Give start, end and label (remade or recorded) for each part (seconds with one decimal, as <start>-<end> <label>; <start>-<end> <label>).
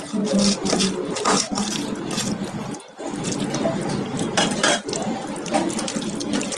0.0-4.3 recorded; 4.3-5.0 remade; 5.0-6.6 recorded